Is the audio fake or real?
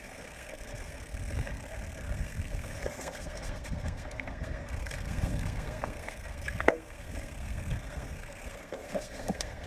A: fake